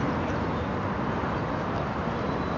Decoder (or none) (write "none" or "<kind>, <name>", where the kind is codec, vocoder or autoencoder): none